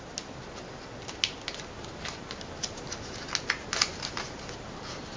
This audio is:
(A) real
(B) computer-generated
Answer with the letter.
A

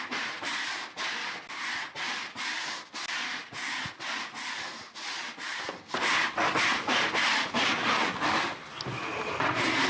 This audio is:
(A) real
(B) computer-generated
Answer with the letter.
A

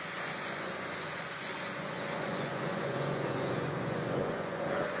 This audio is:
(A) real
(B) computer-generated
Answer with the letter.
B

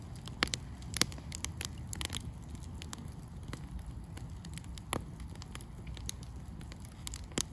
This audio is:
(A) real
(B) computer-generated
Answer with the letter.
A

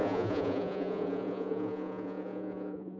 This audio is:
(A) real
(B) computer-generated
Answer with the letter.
B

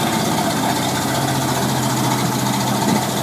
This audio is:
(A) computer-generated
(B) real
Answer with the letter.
B